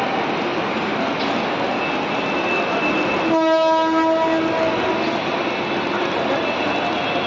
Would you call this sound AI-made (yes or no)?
no